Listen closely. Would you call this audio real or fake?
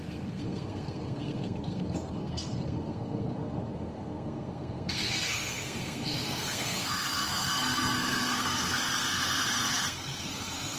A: fake